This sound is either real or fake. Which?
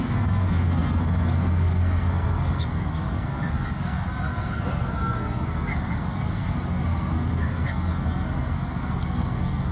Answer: fake